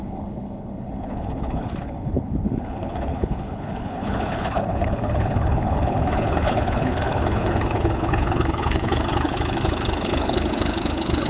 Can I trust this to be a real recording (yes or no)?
no